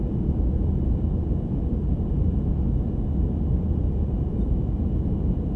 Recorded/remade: recorded